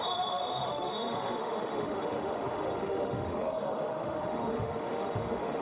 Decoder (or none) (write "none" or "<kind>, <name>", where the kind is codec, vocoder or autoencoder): autoencoder, DAC-VAE